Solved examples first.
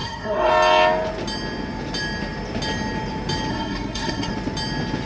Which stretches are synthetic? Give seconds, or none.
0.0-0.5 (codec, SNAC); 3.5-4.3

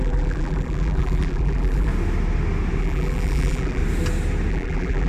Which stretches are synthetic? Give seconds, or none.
0.0-1.9 (vocoder, BigVGAN v2); 2.8-3.8; 4.5-5.1

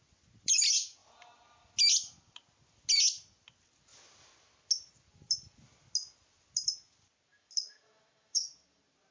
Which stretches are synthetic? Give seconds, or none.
7.3-8.5 (autoencoder, DAC-VAE)

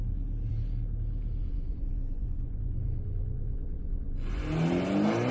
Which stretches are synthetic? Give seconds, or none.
1.4-4.4 (vocoder, Vocos)